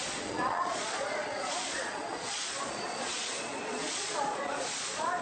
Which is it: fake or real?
fake